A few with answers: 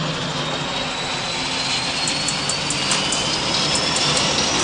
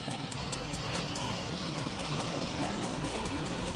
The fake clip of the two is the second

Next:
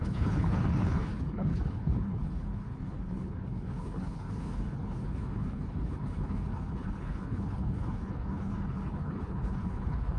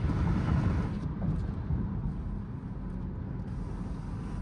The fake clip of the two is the first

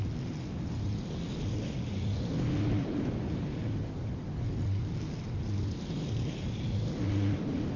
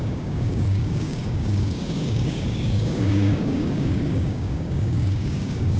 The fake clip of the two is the second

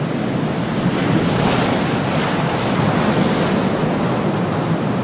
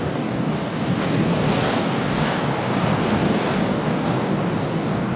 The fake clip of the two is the second